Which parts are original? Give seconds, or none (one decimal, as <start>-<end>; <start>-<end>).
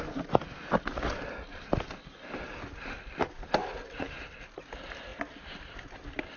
0.0-6.4